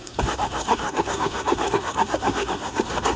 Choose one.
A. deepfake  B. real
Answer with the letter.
A